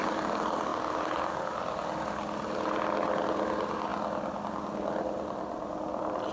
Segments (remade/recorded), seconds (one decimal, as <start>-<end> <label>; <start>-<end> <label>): 0.0-6.3 recorded